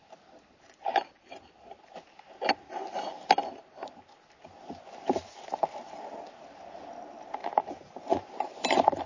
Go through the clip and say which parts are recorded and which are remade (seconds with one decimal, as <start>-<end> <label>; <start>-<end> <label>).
0.0-7.4 recorded; 7.4-8.2 remade; 8.2-9.1 recorded